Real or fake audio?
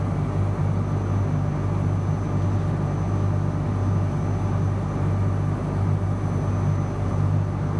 real